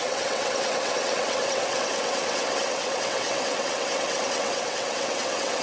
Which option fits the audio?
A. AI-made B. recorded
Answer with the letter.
A